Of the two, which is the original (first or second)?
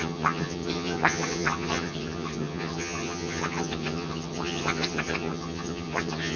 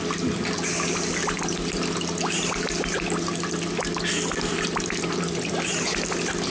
second